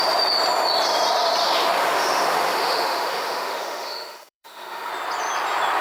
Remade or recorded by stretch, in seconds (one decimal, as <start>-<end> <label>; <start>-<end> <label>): 0.0-1.4 recorded; 1.4-4.9 remade; 4.9-5.8 recorded